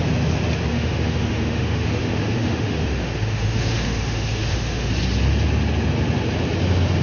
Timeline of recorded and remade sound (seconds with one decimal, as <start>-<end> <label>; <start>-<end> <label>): 0.0-0.7 recorded; 0.7-4.9 remade; 4.9-7.0 recorded